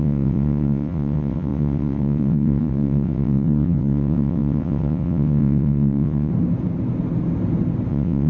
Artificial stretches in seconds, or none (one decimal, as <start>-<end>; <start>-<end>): 0.0-6.3; 7.9-8.3